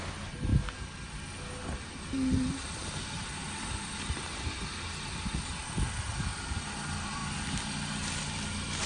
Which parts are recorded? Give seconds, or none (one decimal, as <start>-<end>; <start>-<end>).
0.0-8.9